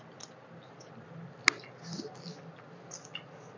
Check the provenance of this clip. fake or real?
real